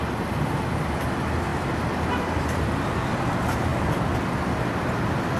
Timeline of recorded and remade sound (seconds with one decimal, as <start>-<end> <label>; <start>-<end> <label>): 0.0-5.4 recorded